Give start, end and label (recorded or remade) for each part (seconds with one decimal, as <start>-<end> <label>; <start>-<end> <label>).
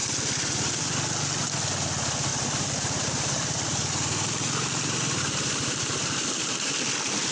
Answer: 0.0-2.3 recorded; 2.3-6.7 remade; 6.7-7.3 recorded